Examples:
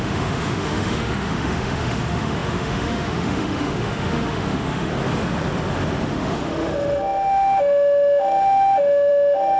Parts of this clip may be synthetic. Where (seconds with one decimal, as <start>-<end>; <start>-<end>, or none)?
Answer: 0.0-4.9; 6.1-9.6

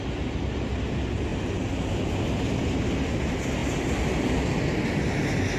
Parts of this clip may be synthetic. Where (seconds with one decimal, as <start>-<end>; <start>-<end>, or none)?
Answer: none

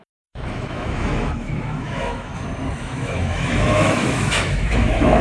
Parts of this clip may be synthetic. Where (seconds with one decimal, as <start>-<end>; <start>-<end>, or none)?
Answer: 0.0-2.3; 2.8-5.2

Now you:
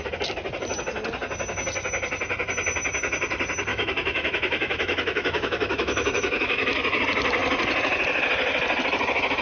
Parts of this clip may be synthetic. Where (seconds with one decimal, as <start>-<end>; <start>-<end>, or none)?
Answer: 3.7-7.0